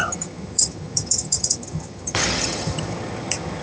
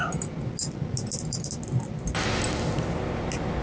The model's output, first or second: first